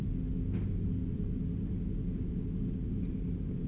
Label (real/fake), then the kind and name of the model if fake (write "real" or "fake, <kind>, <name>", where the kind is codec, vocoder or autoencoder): real